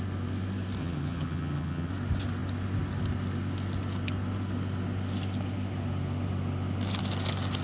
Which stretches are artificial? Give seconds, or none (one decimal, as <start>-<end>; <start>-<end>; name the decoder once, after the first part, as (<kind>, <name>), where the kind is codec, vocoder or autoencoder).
0.8-1.9 (vocoder, HiFi-GAN)